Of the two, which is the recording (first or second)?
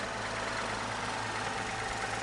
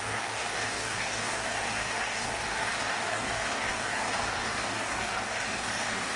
first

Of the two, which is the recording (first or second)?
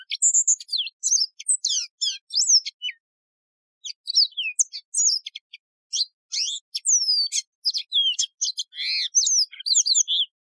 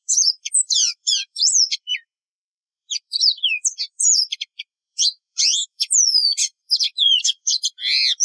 first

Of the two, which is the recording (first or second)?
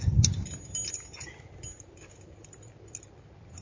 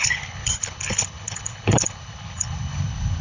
first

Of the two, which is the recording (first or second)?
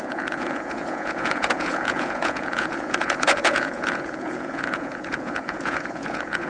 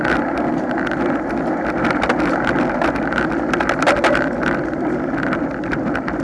second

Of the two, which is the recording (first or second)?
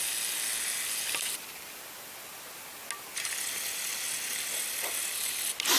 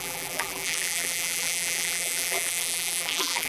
first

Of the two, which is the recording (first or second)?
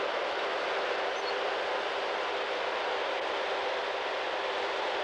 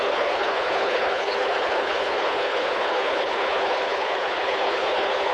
first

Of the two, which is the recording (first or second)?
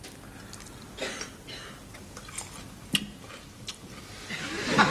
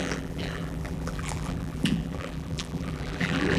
first